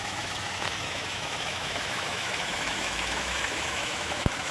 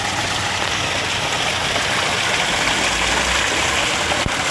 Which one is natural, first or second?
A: second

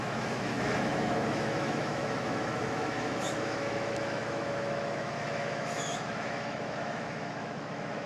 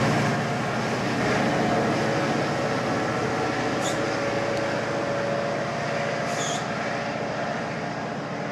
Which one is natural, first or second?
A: second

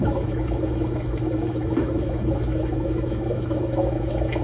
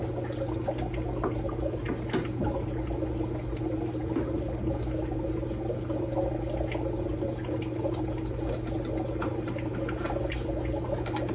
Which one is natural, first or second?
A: second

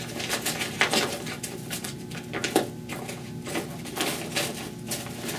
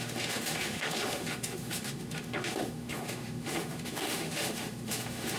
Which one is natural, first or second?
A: first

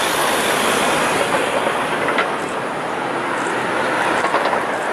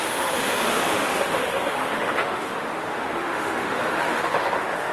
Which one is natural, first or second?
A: first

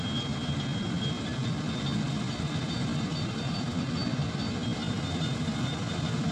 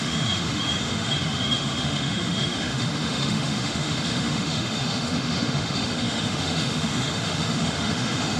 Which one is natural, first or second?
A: first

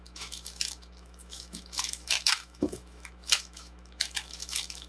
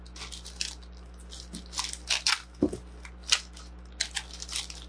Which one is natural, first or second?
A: second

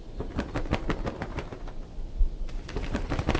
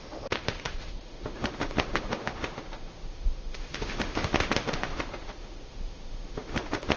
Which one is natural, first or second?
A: first